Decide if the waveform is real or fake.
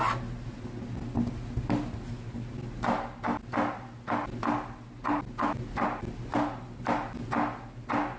real